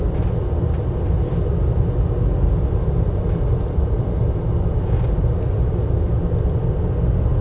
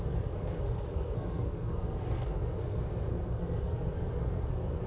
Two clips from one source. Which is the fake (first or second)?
second